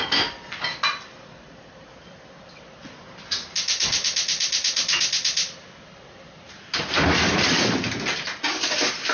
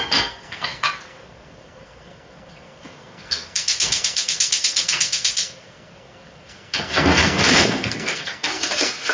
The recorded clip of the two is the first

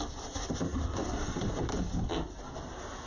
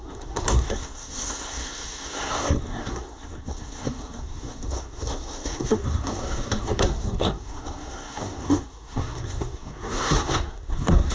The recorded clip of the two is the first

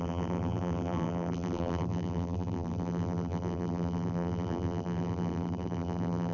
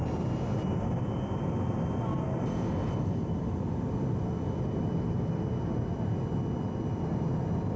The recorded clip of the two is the second